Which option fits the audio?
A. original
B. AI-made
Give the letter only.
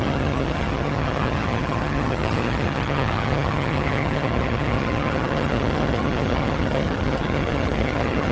B